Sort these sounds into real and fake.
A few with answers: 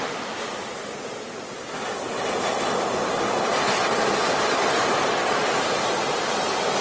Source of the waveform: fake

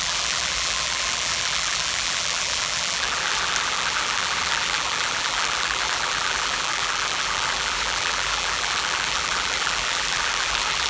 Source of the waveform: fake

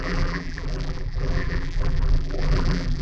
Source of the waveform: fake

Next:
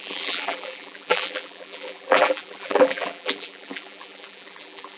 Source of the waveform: fake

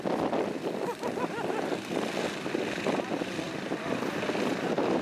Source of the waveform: real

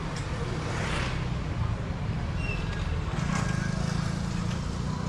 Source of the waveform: real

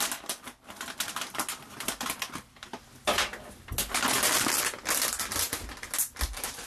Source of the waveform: real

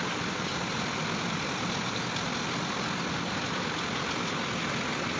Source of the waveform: real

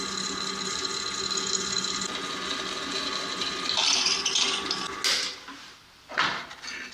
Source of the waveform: real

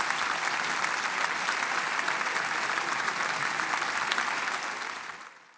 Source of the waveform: real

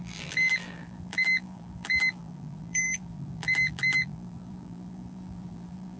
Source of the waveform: fake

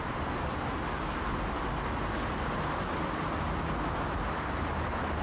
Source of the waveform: real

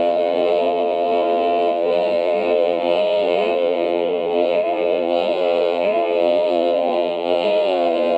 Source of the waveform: fake